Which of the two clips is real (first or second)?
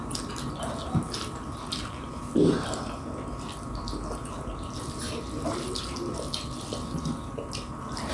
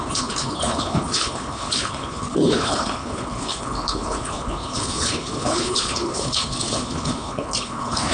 first